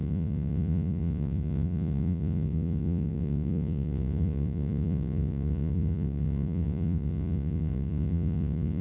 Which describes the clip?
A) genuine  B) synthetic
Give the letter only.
B